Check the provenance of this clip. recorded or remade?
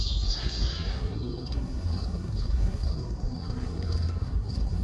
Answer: remade